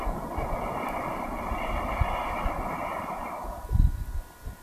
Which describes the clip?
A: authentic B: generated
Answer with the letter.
B